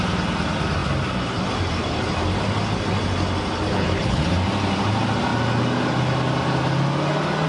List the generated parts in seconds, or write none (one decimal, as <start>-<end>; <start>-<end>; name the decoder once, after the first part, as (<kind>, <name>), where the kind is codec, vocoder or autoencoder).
3.7-4.2 (codec, HILCodec)